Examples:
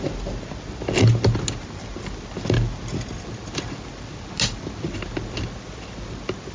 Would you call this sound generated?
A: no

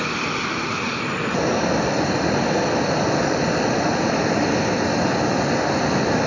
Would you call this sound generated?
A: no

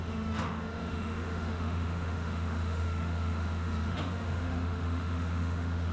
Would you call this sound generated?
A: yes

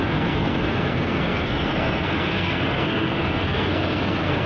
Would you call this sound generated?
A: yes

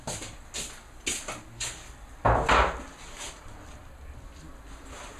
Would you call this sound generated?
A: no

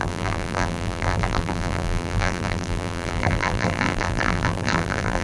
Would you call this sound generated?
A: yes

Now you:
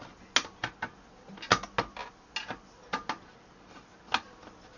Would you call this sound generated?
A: no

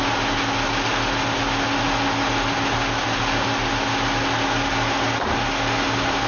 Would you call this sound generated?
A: no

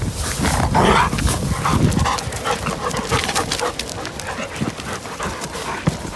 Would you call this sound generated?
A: no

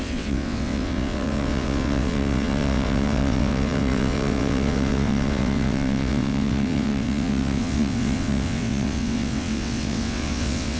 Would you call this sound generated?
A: yes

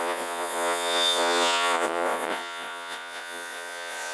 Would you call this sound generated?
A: yes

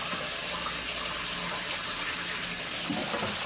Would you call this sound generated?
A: no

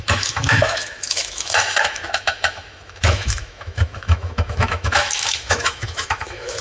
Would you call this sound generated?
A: yes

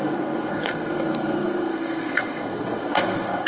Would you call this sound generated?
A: yes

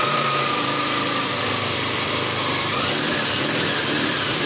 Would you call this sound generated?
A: yes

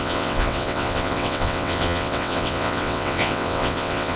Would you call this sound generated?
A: yes